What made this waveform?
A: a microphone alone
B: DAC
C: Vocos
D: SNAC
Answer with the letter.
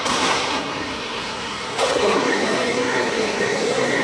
D